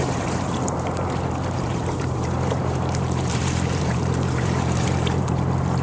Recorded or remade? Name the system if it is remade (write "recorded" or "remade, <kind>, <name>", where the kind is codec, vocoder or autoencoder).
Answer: remade, vocoder, BigVGAN v2